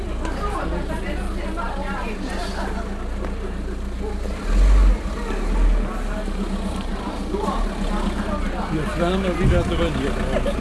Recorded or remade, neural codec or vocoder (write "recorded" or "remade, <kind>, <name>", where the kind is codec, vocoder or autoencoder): recorded